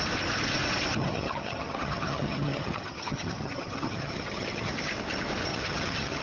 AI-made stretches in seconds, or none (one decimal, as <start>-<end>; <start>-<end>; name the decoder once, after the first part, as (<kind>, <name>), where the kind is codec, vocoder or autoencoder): 1.0-4.7 (vocoder, HiFi-GAN); 5.5-6.2